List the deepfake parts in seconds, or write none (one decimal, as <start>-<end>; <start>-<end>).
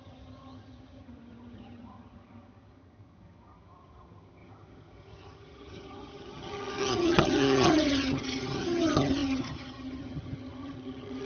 0.0-11.2